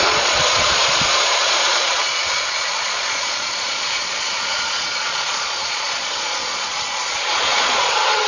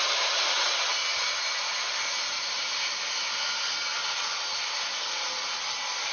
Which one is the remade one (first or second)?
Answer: first